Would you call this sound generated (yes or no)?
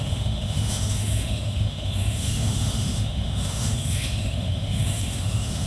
yes